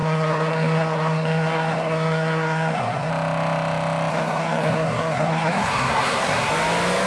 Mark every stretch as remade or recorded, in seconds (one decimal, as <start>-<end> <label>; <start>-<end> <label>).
0.0-3.1 remade; 3.1-4.1 recorded; 4.1-6.5 remade; 6.5-7.1 recorded